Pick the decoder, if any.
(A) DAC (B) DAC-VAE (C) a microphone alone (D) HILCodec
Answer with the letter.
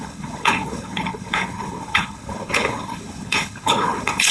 D